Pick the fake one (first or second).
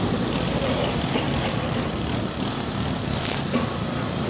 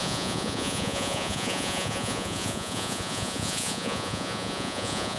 second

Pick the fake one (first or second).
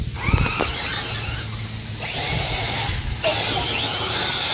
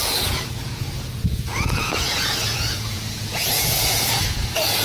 second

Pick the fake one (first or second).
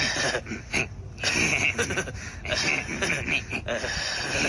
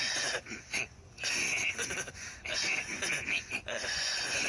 second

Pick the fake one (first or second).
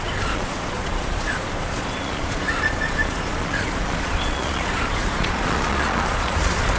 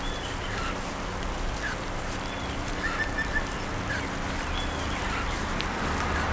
first